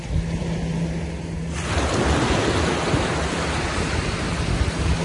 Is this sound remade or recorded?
recorded